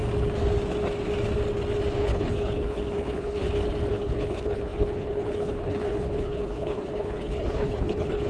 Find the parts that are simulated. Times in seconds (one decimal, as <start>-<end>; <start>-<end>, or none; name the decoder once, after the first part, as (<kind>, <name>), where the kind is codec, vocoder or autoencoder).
1.9-3.4 (codec, HILCodec); 3.9-8.3